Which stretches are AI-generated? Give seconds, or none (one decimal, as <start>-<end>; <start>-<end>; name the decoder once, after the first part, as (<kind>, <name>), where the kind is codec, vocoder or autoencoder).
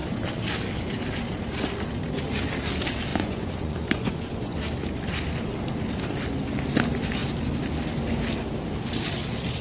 3.1-4.6 (vocoder, Vocos)